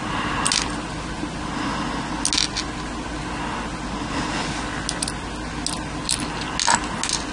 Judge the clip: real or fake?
real